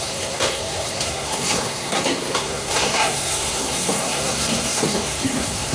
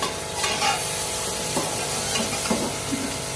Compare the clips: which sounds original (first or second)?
second